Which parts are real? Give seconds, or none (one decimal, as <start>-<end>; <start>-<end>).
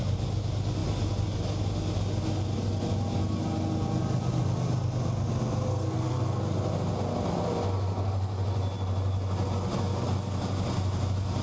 0.0-5.7; 6.4-11.4